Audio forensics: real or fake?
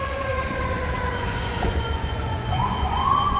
fake